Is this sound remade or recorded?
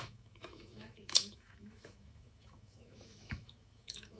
remade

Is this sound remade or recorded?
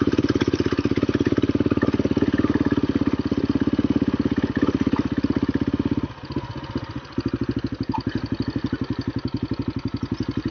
recorded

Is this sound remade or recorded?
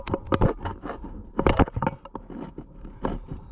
recorded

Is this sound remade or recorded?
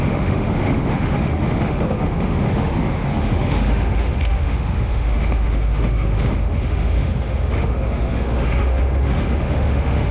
remade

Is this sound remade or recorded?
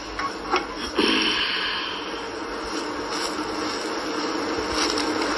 recorded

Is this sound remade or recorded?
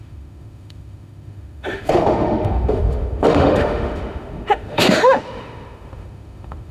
remade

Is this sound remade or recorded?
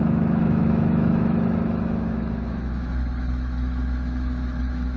remade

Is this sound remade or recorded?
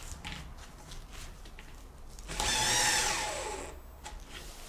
recorded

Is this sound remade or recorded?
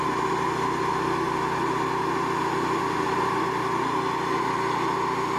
recorded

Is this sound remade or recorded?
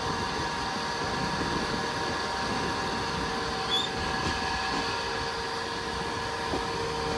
recorded